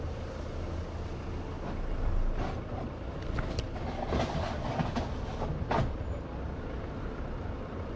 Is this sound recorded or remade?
recorded